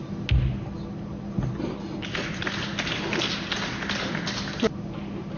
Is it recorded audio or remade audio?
recorded